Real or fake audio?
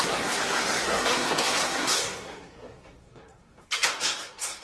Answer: fake